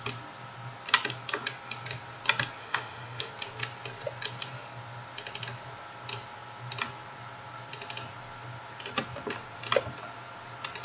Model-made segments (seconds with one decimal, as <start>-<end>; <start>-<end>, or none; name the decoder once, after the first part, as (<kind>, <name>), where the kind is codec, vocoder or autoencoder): 2.6-3.3 (autoencoder, DAC-VAE)